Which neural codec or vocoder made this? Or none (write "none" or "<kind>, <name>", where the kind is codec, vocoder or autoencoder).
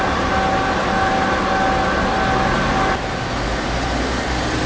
none